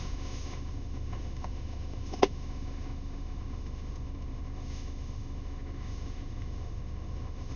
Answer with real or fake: fake